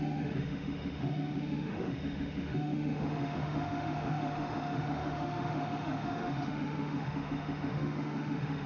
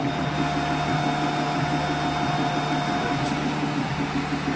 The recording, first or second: second